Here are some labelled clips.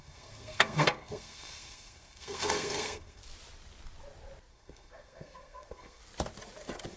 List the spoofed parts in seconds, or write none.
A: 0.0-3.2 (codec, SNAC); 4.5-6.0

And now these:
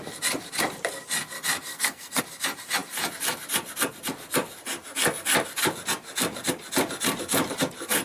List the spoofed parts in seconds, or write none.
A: 1.7-2.2 (codec, SNAC)

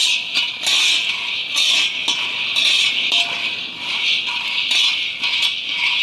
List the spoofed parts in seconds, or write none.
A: none

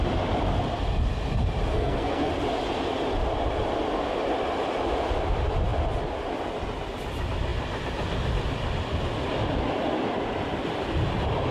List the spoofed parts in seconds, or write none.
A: 1.7-2.3 (codec, SNAC)

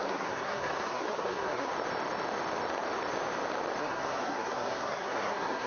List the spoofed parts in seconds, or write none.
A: 0.0-1.7 (codec, SNAC); 3.8-5.7

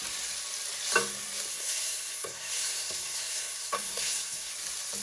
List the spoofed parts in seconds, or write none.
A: 1.5-4.5 (codec, SNAC)

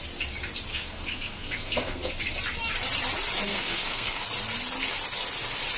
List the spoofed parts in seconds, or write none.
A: 0.7-2.1 (codec, SNAC); 3.5-4.2

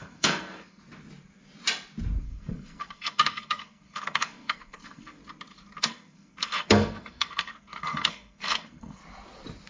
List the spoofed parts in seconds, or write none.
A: 0.0-0.8 (codec, SNAC); 2.2-5.2; 5.8-9.0